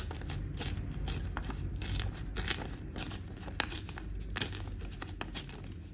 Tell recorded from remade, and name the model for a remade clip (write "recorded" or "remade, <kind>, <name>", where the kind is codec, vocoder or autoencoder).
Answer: recorded